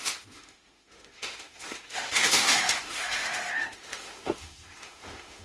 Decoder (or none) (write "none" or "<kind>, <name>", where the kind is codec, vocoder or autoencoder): autoencoder, DAC-VAE